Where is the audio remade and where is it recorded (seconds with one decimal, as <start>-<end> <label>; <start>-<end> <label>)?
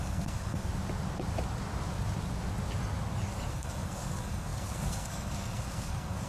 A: 0.0-0.7 remade; 0.7-3.5 recorded; 3.5-6.3 remade